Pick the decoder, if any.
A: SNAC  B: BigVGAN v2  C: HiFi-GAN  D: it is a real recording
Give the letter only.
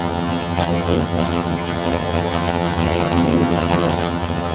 C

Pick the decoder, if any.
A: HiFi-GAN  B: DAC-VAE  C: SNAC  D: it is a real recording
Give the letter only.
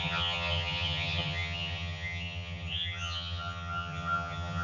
A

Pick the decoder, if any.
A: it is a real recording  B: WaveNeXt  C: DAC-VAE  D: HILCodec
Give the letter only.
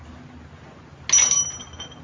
A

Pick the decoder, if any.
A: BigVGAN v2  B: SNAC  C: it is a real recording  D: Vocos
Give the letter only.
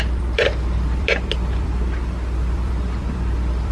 A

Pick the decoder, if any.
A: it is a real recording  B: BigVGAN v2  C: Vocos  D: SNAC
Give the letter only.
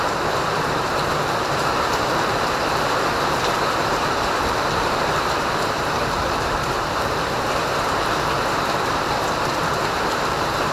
B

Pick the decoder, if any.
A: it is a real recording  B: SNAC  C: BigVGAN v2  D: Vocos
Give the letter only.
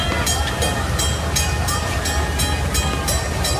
A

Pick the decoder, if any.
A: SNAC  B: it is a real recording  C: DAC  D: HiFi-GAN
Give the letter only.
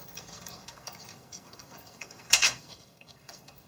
A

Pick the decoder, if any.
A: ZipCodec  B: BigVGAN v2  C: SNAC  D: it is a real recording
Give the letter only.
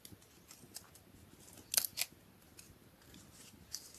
D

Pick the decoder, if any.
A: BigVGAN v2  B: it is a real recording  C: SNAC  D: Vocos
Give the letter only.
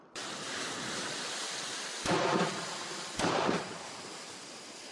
A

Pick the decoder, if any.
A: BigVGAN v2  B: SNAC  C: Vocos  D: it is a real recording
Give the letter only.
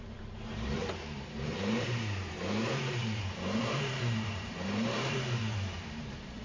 A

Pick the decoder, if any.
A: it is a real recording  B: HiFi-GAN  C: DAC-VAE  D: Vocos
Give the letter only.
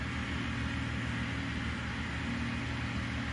A